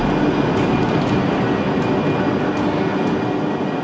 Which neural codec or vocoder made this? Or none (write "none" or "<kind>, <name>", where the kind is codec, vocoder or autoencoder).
none